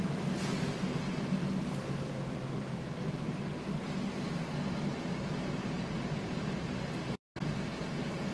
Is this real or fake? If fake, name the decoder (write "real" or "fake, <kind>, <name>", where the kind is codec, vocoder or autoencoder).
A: real